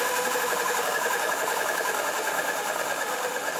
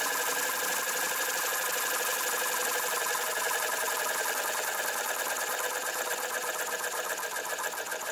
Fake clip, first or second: first